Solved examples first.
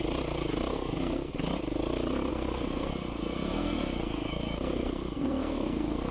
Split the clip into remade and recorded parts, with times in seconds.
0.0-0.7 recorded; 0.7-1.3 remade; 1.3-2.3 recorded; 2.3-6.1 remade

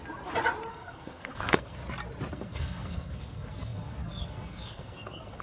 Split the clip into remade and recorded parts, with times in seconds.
0.0-0.7 recorded; 0.7-1.8 remade; 1.8-2.3 recorded; 2.3-5.4 remade

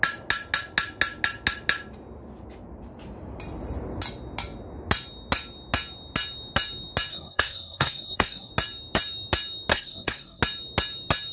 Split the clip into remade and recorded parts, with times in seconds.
0.0-7.1 recorded; 7.1-8.5 remade; 8.5-9.7 recorded; 9.7-10.4 remade; 10.4-11.3 recorded

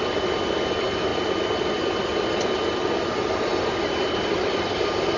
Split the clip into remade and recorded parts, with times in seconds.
0.0-5.2 recorded

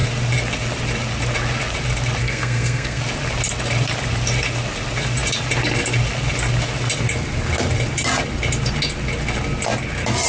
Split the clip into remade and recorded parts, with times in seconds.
0.0-2.2 recorded; 2.2-3.0 remade; 3.0-10.3 recorded

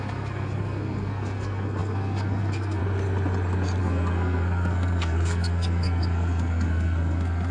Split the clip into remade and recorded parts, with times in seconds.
0.0-2.8 remade; 2.8-3.8 recorded; 3.8-7.5 remade

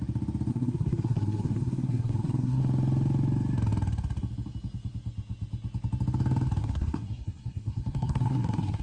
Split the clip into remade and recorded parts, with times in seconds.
0.0-0.5 recorded; 0.5-2.6 remade; 2.6-6.6 recorded; 6.6-8.8 remade